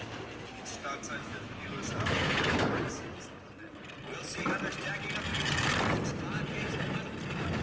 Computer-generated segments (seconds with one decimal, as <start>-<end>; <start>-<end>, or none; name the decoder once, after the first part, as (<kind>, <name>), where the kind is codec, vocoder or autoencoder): 0.8-2.7 (autoencoder, DAC-VAE)